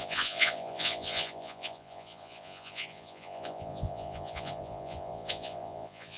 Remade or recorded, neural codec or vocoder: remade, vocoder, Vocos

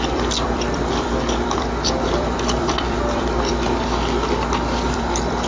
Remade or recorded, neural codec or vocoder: remade, vocoder, BigVGAN v2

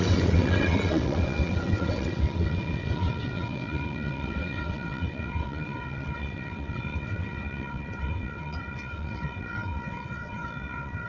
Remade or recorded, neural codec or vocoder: remade, vocoder, WaveNeXt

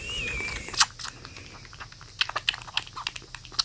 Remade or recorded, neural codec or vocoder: recorded